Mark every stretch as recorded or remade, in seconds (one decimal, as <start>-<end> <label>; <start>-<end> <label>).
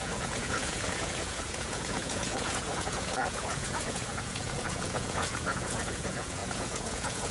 0.0-7.3 remade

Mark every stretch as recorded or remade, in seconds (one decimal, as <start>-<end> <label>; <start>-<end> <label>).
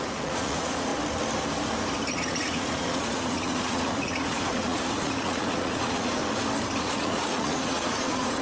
0.0-0.9 remade; 0.9-2.1 recorded; 2.1-6.2 remade; 6.2-6.8 recorded; 6.8-8.4 remade